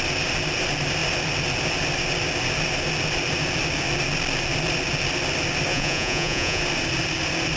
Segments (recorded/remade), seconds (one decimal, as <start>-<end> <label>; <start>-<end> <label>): 0.0-5.7 recorded; 5.7-6.6 remade; 6.6-7.6 recorded